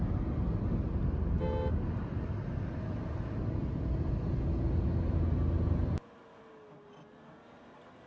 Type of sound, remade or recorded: recorded